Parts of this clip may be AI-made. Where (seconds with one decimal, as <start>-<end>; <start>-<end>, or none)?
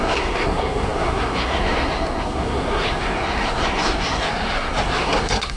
0.0-5.6